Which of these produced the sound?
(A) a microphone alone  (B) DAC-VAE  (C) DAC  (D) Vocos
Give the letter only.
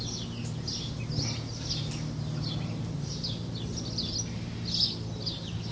A